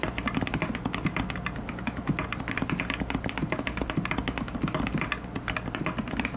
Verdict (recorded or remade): recorded